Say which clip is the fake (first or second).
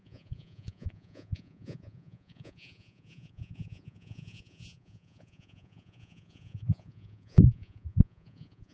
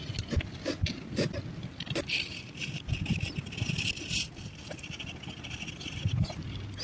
first